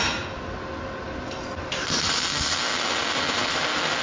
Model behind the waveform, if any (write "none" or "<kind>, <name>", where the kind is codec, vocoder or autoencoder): none